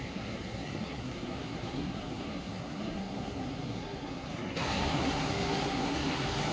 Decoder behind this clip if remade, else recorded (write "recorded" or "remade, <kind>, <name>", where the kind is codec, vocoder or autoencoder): remade, codec, SNAC